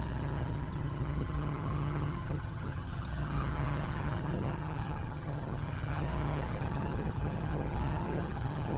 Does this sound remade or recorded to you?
remade